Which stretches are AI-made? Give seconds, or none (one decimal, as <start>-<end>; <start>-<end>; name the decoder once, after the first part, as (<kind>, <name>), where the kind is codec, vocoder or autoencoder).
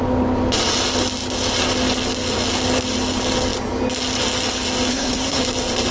4.9-5.4 (codec, SNAC)